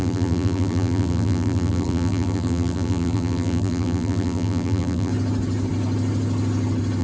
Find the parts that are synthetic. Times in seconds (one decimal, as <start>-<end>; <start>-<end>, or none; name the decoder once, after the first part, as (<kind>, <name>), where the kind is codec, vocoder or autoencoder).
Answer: 0.0-5.1 (vocoder, BigVGAN v2)